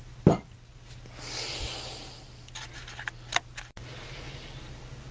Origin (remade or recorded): recorded